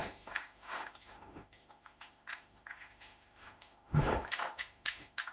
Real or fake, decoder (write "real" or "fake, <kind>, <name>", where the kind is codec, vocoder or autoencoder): fake, autoencoder, DAC-VAE